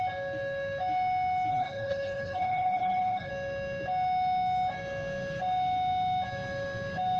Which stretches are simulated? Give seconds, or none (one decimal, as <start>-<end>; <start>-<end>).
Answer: 1.5-3.3